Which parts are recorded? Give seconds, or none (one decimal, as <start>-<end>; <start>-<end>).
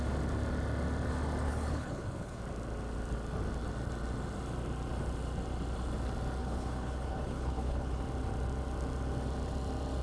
0.0-1.5; 2.4-6.4; 8.0-10.0